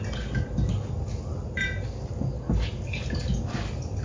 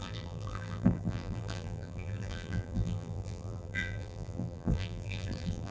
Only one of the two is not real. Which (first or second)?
second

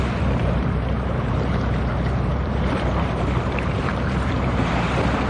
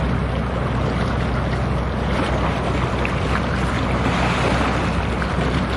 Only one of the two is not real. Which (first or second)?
first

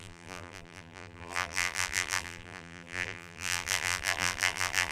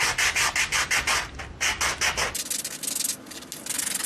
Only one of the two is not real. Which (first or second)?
first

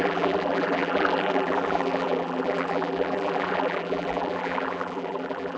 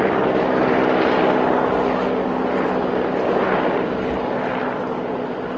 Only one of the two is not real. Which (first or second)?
first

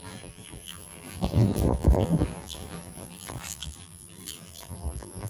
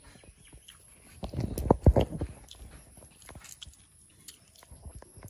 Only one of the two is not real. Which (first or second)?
first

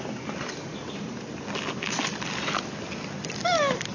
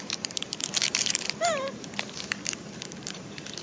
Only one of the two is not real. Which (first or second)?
second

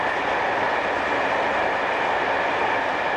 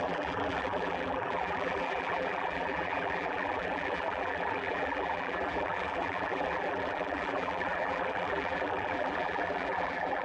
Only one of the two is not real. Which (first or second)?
second